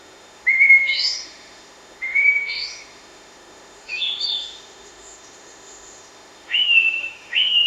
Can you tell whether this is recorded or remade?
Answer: remade